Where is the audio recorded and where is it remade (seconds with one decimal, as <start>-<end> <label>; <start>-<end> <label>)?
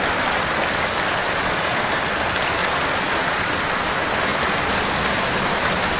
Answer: 0.0-1.2 recorded; 1.2-1.9 remade; 1.9-2.6 recorded; 2.6-3.5 remade; 3.5-6.0 recorded